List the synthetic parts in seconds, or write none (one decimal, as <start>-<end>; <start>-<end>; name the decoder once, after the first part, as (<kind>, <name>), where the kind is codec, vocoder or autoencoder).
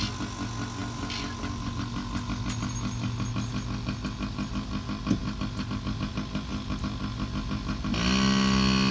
none